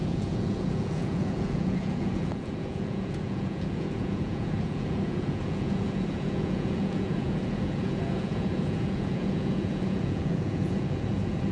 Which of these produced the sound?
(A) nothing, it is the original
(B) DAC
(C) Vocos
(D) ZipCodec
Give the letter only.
C